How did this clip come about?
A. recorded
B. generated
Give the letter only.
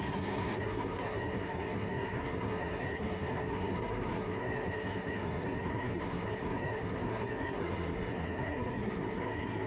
B